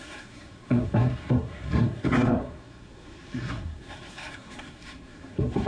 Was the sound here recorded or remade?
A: remade